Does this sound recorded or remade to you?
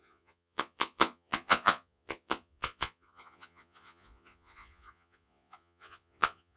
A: remade